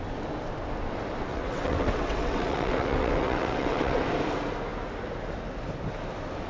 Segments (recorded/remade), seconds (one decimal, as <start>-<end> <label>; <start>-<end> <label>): 0.0-1.3 recorded; 1.3-4.0 remade; 4.0-6.5 recorded